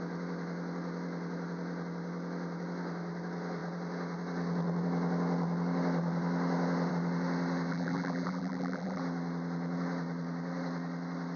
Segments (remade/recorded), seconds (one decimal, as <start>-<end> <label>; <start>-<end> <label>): 0.0-7.7 recorded; 7.7-9.0 remade; 9.0-11.4 recorded